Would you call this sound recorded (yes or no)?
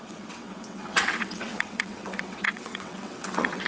no